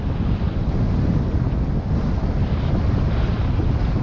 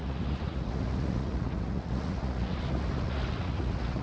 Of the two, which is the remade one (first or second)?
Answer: second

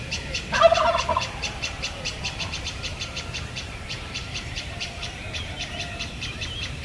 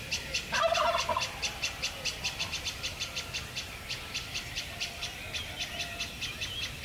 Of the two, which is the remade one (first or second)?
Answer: first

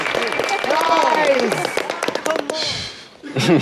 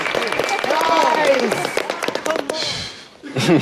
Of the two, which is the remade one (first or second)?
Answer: second